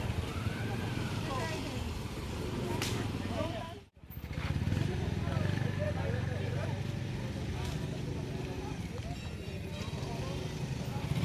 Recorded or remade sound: recorded